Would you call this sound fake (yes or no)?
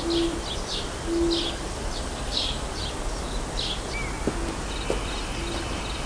no